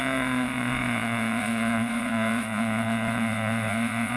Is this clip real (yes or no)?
no